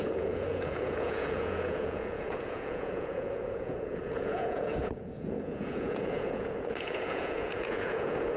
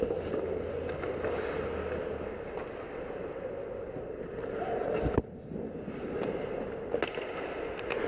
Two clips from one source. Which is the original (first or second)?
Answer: second